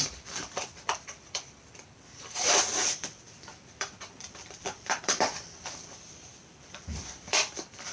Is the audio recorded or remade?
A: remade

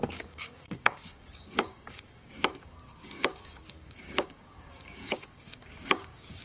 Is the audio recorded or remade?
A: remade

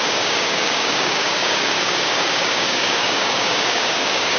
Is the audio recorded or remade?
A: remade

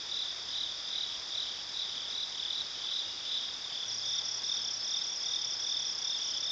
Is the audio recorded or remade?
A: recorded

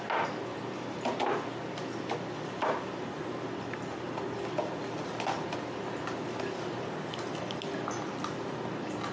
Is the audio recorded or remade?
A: recorded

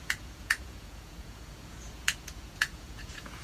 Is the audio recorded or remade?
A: remade